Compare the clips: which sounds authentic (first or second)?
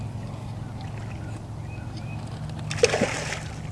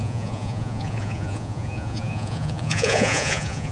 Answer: first